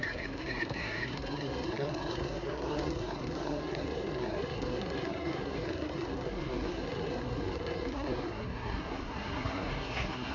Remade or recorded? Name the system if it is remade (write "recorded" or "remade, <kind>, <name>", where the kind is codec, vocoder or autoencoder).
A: remade, codec, SNAC